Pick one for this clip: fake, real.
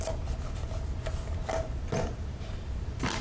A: real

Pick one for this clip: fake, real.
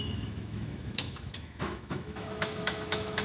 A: fake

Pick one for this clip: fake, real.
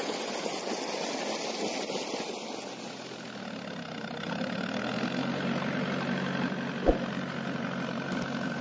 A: real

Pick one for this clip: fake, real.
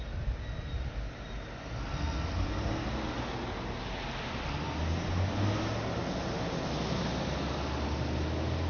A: real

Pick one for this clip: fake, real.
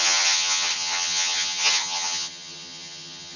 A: fake